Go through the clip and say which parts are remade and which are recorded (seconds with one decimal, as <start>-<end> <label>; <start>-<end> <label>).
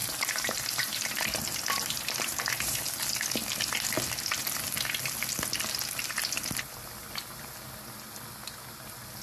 0.0-2.4 remade; 2.4-9.2 recorded